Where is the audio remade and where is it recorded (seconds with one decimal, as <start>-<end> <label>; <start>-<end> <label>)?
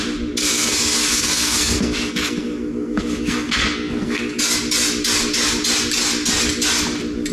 0.0-0.4 recorded; 0.4-4.4 remade; 4.4-7.3 recorded